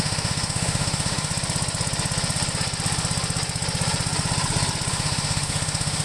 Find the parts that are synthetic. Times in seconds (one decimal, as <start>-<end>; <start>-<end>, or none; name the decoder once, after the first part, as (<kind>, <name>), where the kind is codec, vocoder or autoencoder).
0.0-1.3 (autoencoder, DAC-VAE); 4.9-6.0